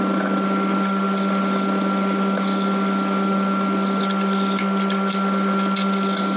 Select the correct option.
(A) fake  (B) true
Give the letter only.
B